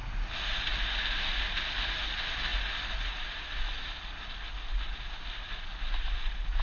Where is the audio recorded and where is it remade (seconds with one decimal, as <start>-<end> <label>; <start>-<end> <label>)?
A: 0.0-5.7 recorded; 5.7-6.6 remade